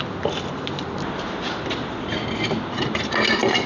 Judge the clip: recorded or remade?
recorded